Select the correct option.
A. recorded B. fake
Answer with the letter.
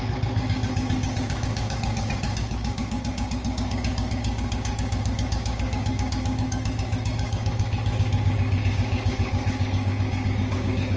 B